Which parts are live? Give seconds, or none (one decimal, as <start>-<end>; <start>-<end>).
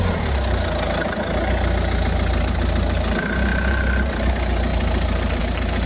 0.0-3.5; 4.3-5.9